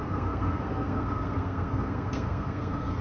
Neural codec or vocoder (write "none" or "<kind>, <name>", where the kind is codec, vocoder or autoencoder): codec, SNAC